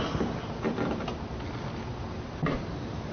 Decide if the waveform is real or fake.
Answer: real